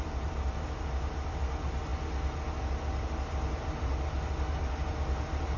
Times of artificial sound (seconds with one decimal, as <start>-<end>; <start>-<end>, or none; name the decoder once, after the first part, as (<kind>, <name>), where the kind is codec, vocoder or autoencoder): none